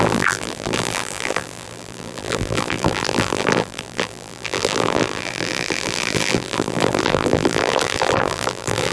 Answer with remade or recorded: remade